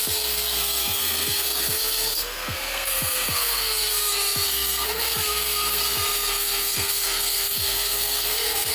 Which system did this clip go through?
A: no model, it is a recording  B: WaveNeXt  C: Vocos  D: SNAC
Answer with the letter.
D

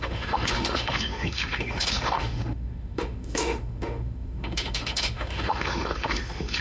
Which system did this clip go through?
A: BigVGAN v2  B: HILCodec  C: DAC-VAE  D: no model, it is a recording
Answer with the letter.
C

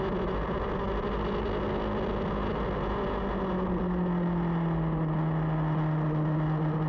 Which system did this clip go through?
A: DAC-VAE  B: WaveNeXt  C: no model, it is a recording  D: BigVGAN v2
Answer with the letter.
C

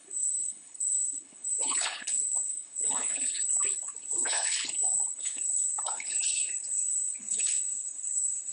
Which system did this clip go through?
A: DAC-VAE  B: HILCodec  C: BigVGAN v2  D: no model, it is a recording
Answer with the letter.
B